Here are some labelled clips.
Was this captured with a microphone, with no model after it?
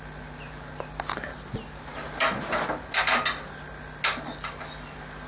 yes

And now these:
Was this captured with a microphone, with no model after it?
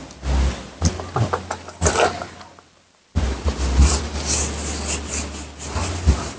yes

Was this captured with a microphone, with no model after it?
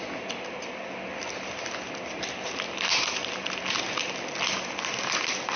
yes